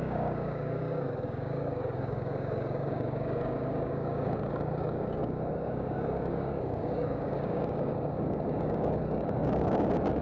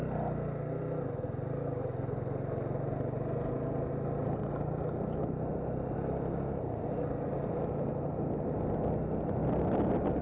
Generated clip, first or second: first